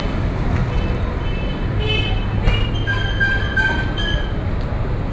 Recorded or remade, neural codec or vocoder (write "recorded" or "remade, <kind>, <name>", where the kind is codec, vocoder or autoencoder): recorded